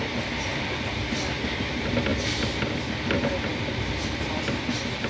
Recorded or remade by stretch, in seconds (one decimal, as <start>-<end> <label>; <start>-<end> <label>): 0.0-5.1 recorded